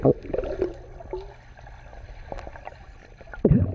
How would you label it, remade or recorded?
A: recorded